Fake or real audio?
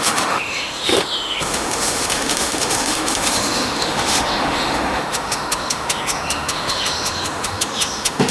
fake